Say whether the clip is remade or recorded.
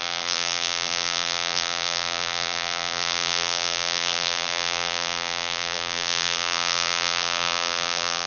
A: remade